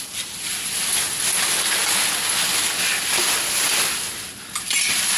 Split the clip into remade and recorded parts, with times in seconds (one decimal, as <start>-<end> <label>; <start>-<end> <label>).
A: 0.0-5.2 recorded